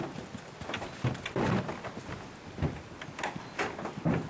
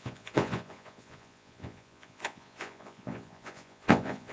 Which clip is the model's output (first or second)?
second